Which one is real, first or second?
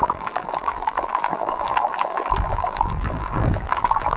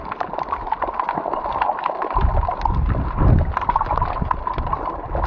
second